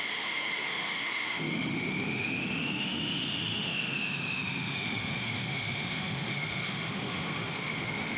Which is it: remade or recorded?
remade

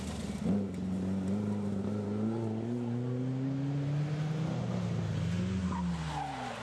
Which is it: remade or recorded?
recorded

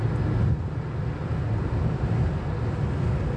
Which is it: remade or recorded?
recorded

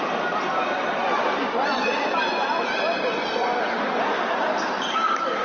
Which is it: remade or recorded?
recorded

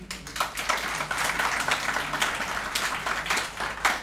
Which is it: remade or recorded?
recorded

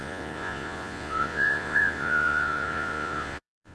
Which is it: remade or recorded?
remade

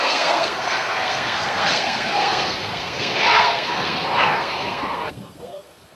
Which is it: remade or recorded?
remade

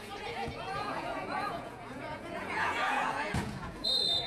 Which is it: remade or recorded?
remade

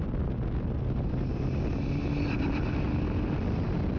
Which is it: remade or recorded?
recorded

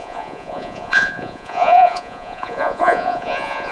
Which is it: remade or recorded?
remade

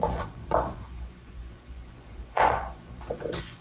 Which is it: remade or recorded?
remade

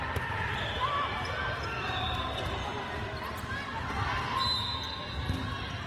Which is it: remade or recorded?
recorded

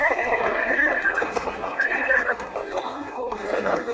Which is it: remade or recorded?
remade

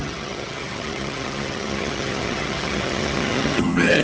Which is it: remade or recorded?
remade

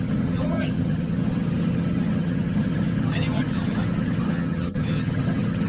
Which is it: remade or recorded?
remade